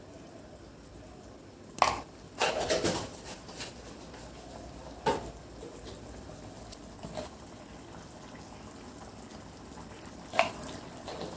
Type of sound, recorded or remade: recorded